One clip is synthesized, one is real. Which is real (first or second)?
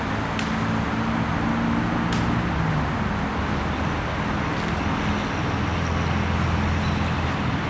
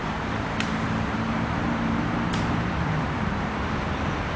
first